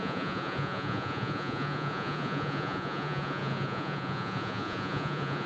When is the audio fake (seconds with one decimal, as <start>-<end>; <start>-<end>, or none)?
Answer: 0.0-5.5